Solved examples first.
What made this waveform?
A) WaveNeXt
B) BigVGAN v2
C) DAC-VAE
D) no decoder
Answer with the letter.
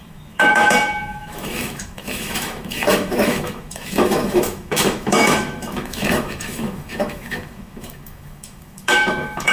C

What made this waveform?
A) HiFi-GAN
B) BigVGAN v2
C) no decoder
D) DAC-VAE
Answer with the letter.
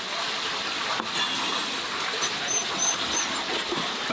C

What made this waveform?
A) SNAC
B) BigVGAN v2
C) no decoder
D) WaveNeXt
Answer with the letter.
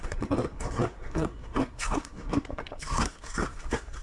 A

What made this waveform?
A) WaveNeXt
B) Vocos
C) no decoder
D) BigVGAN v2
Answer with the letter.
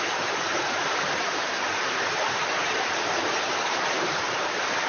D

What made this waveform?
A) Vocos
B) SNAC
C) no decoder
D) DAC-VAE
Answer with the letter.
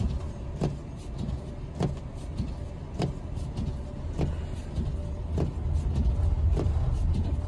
C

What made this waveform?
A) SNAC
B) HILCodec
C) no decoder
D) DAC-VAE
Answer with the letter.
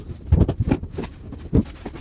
C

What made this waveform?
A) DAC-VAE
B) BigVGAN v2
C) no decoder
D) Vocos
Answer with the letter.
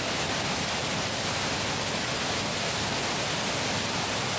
C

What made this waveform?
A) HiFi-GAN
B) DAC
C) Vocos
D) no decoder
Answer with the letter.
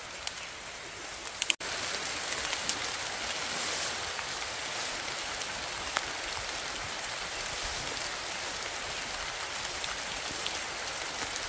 D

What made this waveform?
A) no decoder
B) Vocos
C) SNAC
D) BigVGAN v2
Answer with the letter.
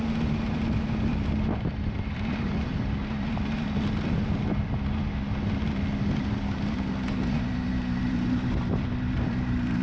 A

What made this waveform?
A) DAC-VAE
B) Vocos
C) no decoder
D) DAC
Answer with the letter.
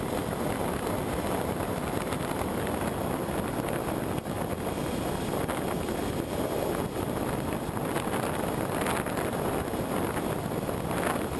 C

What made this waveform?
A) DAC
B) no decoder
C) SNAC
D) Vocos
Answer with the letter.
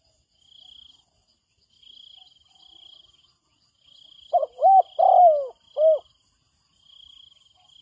B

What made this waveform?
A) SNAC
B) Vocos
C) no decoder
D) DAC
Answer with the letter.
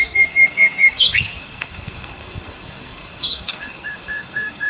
A